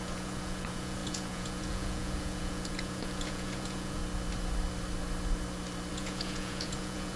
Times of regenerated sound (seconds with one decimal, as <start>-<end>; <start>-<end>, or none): 0.0-4.0; 5.9-7.2